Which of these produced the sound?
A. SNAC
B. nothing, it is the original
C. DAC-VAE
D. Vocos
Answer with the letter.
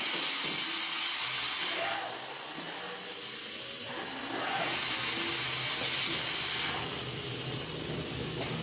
B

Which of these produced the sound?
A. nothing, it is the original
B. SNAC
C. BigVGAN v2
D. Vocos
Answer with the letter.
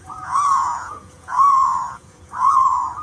D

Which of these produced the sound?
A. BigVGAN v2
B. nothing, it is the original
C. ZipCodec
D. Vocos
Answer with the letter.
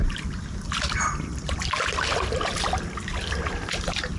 B